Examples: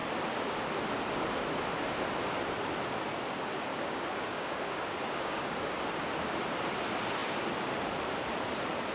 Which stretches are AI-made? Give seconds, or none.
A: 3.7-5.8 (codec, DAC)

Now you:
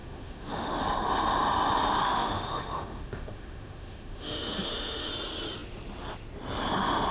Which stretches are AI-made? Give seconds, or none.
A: 0.0-0.8 (autoencoder, DAC-VAE); 2.0-5.1

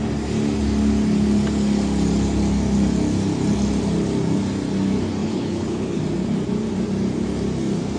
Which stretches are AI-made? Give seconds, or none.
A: 5.2-6.0 (codec, HILCodec)

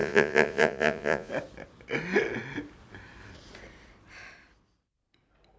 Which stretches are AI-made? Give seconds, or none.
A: 0.0-1.3 (vocoder, Vocos)

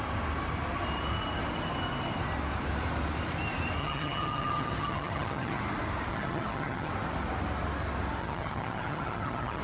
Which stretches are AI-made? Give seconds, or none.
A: 3.8-5.6 (vocoder, HiFi-GAN); 6.1-6.9; 8.2-9.6

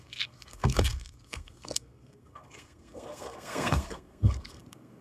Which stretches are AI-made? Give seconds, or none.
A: 0.0-5.0 (codec, SNAC)

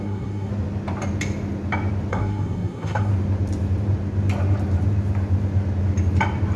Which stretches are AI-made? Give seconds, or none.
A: 0.0-0.5 (codec, SNAC); 2.1-3.1

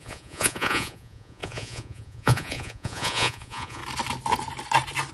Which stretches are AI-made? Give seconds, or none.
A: 0.0-3.8 (vocoder, Vocos)